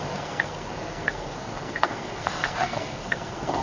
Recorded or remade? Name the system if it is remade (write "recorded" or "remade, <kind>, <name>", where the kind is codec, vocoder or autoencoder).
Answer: remade, codec, SNAC